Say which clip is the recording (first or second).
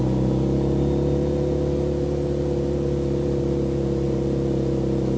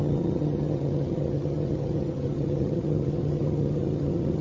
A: first